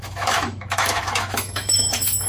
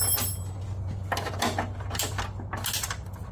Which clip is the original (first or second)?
second